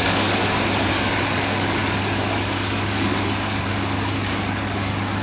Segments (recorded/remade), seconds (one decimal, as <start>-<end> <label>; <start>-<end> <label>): 0.0-0.4 remade; 0.4-0.9 recorded; 0.9-5.2 remade